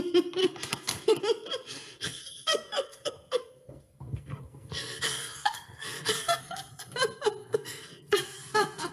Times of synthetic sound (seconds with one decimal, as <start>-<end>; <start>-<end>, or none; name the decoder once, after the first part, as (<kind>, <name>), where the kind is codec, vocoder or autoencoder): 0.4-1.2 (codec, SNAC); 1.6-6.7; 7.4-8.9